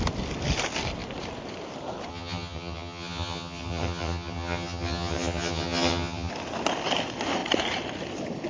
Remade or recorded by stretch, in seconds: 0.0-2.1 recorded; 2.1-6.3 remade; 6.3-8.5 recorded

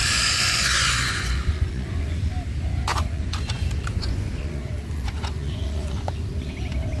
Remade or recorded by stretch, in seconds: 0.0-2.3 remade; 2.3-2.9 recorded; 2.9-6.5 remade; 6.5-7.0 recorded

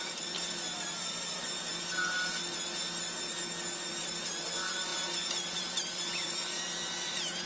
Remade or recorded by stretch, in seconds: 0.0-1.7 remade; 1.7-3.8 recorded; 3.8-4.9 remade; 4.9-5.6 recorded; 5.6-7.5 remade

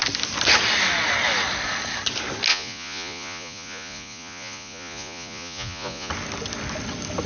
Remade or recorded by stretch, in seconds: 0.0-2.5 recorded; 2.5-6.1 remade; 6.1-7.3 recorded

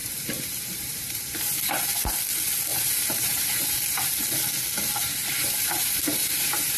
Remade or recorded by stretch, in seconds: 0.0-1.2 remade; 1.2-2.7 recorded; 2.7-4.1 remade; 4.1-5.0 recorded; 5.0-6.8 remade